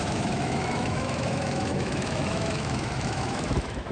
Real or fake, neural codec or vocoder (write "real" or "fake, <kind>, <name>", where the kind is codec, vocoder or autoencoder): fake, autoencoder, DAC-VAE